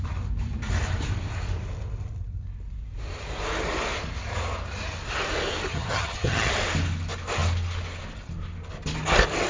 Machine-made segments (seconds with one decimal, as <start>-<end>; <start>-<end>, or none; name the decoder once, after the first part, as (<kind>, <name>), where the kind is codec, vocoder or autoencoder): 5.7-6.5 (vocoder, HiFi-GAN)